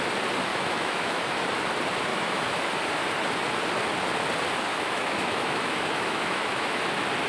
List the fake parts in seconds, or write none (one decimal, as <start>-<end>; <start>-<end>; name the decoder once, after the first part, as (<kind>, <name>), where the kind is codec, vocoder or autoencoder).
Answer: 0.5-1.2 (autoencoder, DAC-VAE); 2.1-2.7; 4.7-6.8